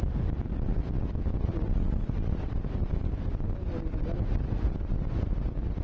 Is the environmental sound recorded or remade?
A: recorded